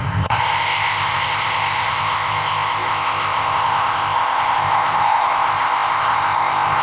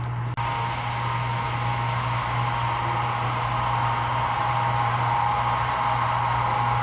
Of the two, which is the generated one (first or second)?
first